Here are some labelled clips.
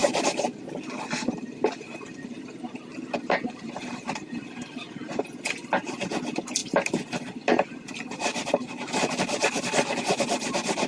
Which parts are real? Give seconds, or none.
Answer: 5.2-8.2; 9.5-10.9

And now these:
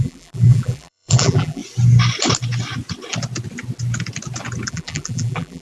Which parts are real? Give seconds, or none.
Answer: 1.6-4.7